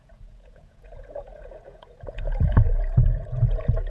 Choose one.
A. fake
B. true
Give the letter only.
A